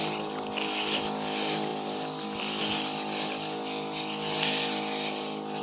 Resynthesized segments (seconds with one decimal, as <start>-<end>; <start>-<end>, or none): none